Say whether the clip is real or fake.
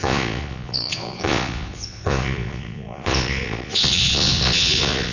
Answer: fake